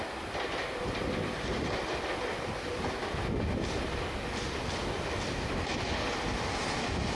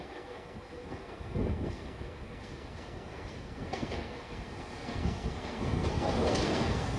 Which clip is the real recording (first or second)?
first